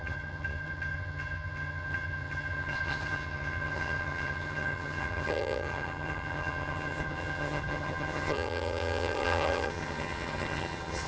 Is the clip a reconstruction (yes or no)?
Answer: yes